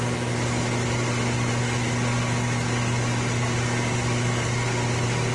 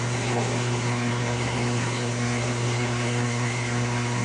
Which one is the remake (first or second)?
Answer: second